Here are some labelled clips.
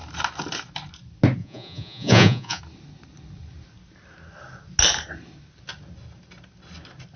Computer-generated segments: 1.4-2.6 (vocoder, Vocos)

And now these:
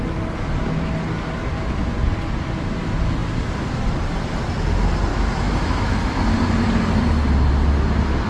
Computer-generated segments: 5.1-6.2 (autoencoder, DAC-VAE)

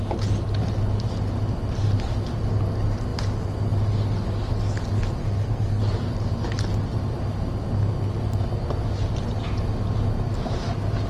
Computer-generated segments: 5.2-5.8 (codec, SNAC)

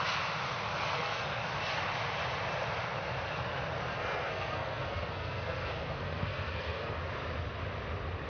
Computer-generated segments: 0.9-1.4 (codec, SNAC); 3.9-7.0

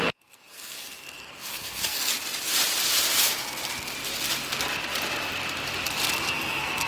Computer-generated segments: 0.0-2.1 (codec, SNAC); 6.2-6.9

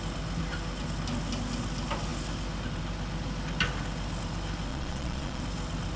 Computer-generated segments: 4.7-5.4 (vocoder, Vocos)

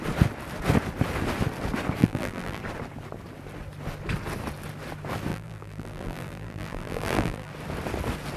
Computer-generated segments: 2.0-2.6 (vocoder, BigVGAN v2); 5.3-7.5